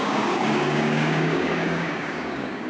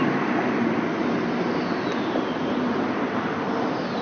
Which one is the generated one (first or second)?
first